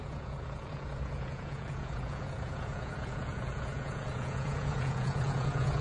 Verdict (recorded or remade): remade